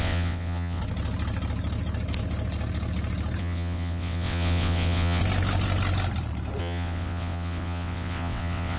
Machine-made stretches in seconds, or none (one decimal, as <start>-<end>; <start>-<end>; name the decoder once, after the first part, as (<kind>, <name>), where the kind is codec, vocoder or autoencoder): 0.0-0.8 (vocoder, WaveNeXt); 3.4-5.2; 6.6-8.8